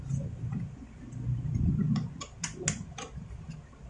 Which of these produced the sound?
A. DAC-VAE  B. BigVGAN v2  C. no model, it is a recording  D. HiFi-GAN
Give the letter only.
C